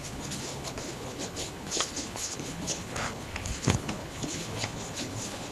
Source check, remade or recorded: remade